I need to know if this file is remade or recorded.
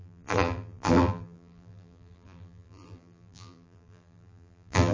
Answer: remade